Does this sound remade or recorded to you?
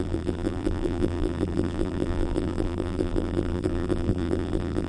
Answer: remade